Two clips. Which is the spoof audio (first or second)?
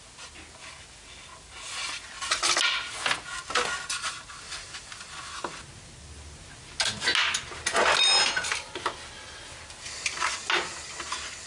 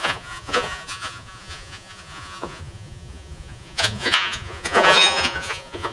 second